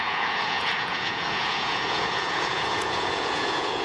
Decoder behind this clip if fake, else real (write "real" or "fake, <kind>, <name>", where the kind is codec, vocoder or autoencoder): fake, vocoder, Vocos